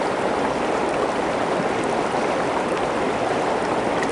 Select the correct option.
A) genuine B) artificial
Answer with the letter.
A